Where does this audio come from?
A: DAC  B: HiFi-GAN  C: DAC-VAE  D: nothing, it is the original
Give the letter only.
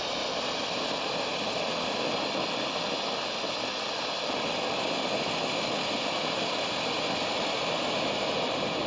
D